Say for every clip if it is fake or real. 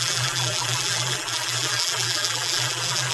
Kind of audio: fake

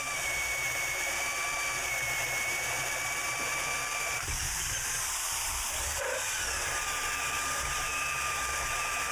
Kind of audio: fake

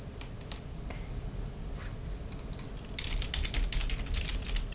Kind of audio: real